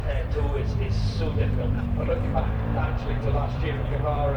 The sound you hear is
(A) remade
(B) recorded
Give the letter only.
A